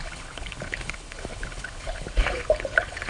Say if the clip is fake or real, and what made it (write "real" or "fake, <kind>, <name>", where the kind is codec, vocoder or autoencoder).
fake, codec, HILCodec